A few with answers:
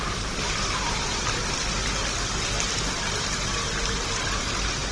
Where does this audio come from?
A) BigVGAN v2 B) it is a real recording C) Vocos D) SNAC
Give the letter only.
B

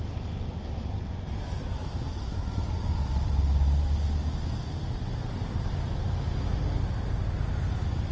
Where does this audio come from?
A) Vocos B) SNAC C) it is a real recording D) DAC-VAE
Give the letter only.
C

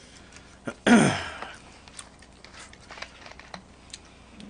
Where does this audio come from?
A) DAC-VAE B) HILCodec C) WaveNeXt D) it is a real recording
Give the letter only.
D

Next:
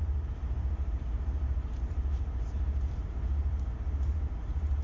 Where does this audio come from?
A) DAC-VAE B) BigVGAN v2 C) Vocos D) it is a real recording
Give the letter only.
B